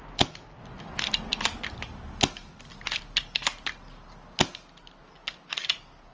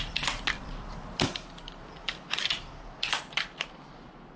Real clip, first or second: first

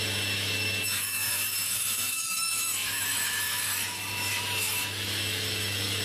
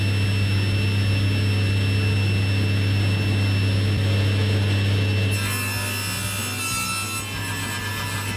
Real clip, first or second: second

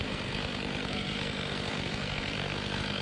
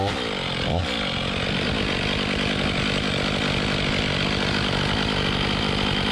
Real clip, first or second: second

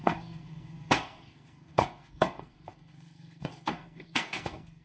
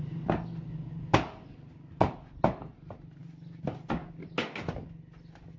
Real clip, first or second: second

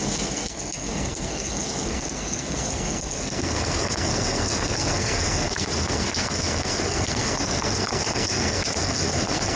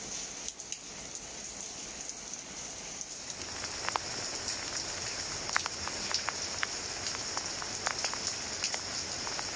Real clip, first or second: second